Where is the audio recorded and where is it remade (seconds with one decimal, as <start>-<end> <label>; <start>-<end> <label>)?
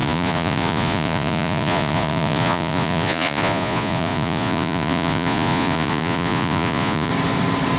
0.0-7.1 remade; 7.1-7.8 recorded